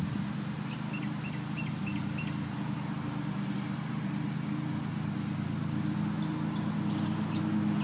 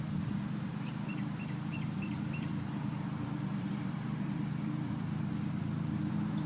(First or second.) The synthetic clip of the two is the second